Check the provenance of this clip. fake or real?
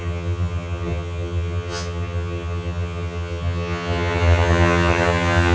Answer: fake